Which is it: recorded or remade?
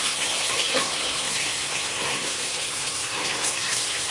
remade